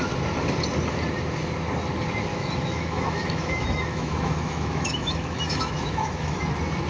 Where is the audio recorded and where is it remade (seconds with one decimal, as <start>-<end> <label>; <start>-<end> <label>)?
0.0-2.3 recorded; 2.3-6.4 remade; 6.4-6.9 recorded